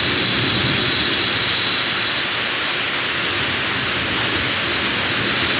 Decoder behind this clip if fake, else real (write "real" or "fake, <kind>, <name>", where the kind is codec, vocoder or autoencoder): real